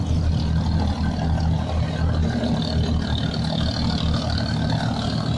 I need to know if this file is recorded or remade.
recorded